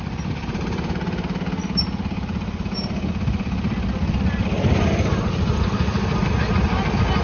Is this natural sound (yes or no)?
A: yes